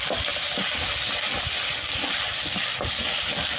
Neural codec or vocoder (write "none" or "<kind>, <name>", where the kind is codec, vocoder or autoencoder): none